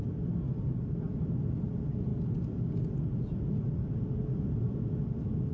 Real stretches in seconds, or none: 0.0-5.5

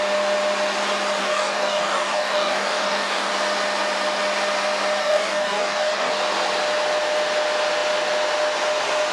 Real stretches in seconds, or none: 0.0-1.2; 3.3-5.0; 6.1-9.1

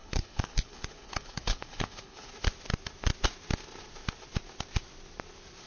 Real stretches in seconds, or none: 2.3-5.7

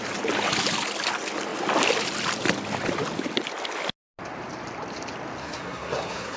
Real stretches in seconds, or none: 0.0-5.4

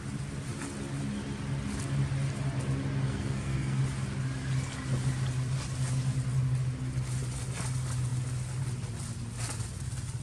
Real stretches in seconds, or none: 0.0-3.0; 3.8-10.2